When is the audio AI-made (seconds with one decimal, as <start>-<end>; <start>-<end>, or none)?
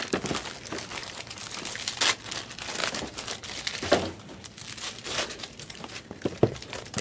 1.0-1.7; 2.8-7.0